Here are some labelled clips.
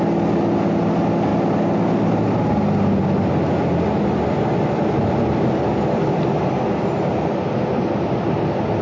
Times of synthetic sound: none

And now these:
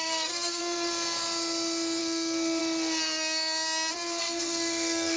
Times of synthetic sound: 0.0-0.6 (codec, SNAC); 2.0-2.6; 4.2-5.2

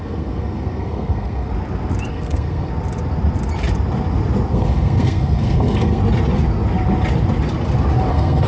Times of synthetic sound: 0.0-1.5 (codec, SNAC); 2.1-2.7; 4.5-6.0; 8.1-8.5